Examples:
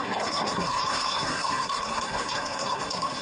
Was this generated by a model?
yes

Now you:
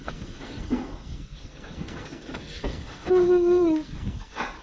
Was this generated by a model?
yes